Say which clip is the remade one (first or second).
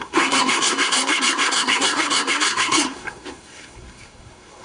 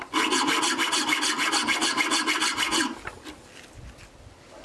first